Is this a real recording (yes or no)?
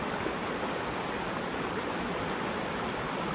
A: yes